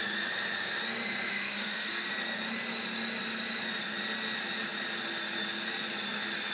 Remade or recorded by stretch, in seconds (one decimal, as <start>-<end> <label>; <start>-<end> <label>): 0.0-1.3 recorded; 1.3-1.9 remade; 1.9-6.5 recorded